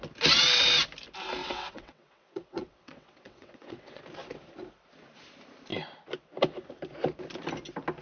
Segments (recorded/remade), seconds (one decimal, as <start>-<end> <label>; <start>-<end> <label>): 0.0-1.4 recorded; 1.4-4.0 remade; 4.0-8.0 recorded